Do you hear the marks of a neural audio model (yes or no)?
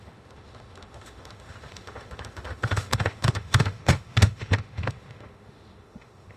yes